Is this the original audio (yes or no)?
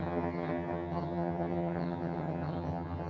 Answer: no